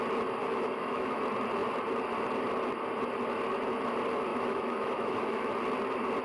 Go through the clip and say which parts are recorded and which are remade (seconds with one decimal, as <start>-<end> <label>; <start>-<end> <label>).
0.0-0.4 recorded; 0.4-1.2 remade; 1.2-4.3 recorded; 4.3-5.5 remade; 5.5-6.2 recorded